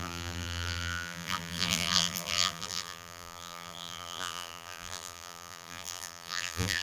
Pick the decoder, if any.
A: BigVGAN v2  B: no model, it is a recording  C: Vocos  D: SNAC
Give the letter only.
A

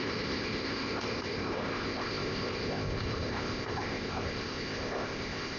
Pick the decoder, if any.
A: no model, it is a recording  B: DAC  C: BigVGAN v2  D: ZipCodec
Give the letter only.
D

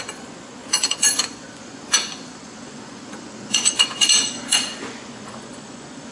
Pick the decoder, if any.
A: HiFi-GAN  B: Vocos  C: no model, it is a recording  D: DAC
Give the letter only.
B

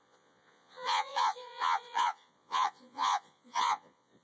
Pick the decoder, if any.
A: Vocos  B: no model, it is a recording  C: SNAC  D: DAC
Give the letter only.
A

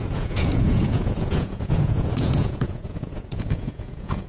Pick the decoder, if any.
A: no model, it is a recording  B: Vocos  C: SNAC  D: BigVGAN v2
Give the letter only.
B